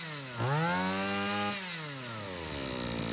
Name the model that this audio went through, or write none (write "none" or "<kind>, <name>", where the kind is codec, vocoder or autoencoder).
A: none